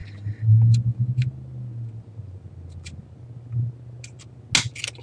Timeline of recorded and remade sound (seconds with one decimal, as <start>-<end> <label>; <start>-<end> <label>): 0.0-5.0 recorded